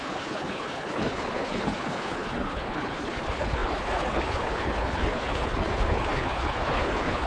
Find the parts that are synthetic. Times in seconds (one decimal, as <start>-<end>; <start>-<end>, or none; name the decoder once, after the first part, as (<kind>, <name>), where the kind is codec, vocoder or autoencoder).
0.0-7.3 (codec, HILCodec)